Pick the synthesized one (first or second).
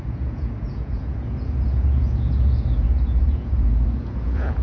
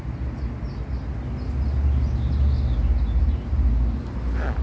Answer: first